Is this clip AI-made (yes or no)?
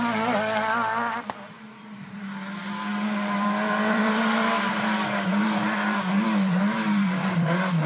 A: yes